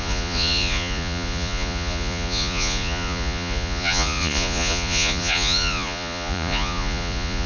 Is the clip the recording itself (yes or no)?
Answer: no